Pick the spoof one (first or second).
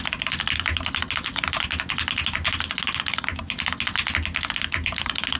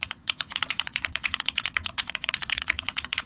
second